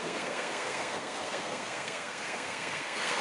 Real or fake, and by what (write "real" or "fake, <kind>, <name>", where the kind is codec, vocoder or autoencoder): fake, codec, SNAC